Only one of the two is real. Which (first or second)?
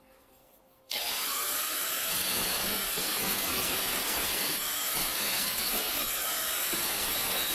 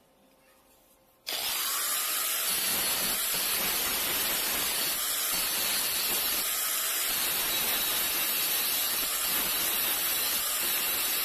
second